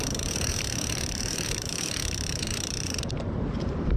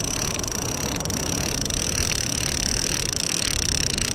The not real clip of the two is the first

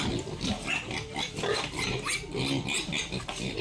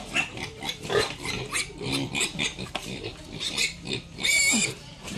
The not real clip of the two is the second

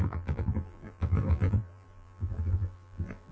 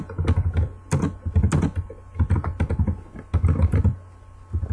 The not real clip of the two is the first